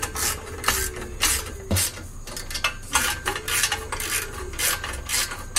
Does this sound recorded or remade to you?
recorded